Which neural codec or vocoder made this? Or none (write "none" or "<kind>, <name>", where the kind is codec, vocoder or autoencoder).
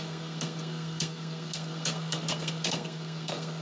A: codec, SNAC